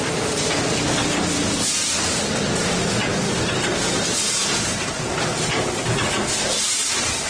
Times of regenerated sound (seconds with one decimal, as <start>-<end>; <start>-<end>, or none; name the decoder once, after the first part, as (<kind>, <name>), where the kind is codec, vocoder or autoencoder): none